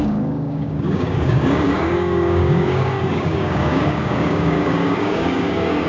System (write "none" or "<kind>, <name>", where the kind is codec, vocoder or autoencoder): codec, DAC